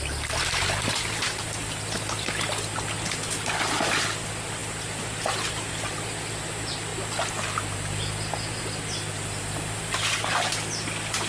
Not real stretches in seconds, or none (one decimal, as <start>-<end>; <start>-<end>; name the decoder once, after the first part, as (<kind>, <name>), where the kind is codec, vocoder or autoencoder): none